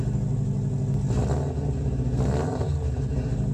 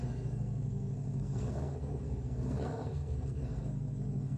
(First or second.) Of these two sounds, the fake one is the second